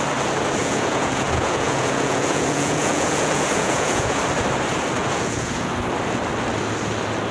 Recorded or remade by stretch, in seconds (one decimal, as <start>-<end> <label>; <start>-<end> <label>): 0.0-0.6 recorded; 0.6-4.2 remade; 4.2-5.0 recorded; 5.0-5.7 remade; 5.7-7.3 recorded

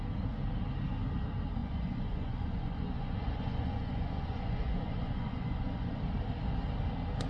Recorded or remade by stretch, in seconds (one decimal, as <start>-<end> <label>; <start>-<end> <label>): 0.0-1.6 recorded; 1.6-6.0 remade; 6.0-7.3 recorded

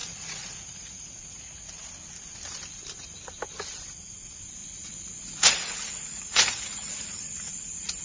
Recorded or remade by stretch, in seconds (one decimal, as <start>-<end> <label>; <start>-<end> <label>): 0.0-1.9 remade; 1.9-4.6 recorded; 4.6-8.0 remade

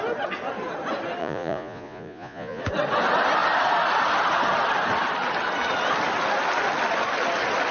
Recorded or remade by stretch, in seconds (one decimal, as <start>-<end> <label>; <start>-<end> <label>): 0.0-1.2 recorded; 1.2-2.6 remade; 2.6-7.7 recorded

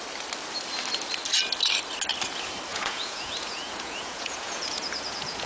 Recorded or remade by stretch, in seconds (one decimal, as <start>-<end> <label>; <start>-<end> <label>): 0.0-2.7 recorded; 2.7-5.5 remade

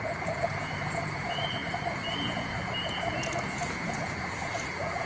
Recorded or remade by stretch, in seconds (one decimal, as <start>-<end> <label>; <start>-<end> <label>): 0.0-5.1 remade

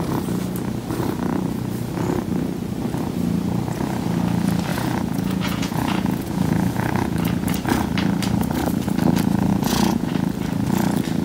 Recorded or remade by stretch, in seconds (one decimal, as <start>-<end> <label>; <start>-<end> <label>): 0.0-4.7 recorded; 4.7-7.5 remade; 7.5-9.5 recorded; 9.5-10.1 remade; 10.1-11.2 recorded

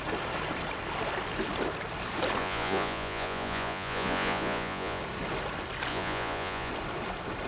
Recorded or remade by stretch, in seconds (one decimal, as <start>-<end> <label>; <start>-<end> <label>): 0.0-2.4 recorded; 2.4-5.0 remade; 5.0-5.9 recorded; 5.9-6.7 remade; 6.7-7.5 recorded